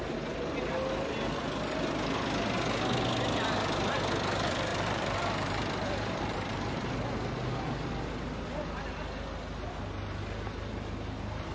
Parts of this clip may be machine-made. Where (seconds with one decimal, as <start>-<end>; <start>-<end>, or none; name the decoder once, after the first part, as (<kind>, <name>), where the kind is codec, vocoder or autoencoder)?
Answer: 4.7-6.9 (vocoder, BigVGAN v2)